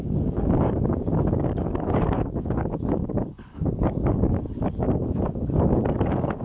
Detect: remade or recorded remade